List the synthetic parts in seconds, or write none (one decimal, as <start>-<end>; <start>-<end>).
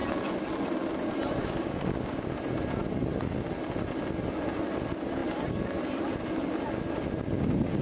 1.4-2.3